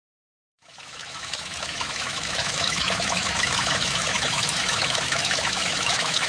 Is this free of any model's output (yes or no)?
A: no